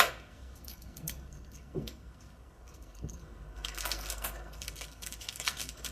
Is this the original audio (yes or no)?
no